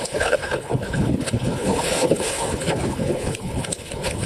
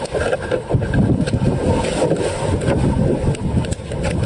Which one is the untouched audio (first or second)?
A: second